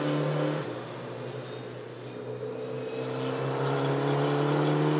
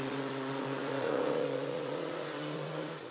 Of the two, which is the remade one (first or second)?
second